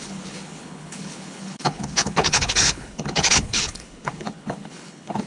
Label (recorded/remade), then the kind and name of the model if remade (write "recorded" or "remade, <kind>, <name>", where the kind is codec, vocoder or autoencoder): remade, codec, HILCodec